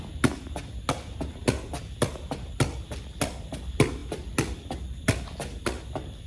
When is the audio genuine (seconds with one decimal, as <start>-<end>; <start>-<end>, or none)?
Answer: 0.0-6.3